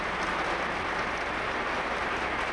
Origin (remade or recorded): recorded